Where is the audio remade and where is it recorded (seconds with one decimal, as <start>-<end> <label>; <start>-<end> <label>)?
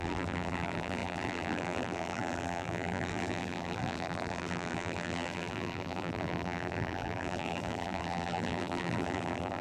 0.0-9.6 remade